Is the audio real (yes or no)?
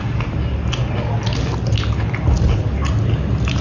yes